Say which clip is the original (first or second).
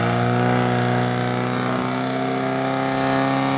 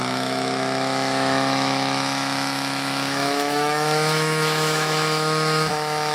first